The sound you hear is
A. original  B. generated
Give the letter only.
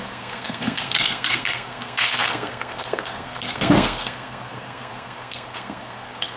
B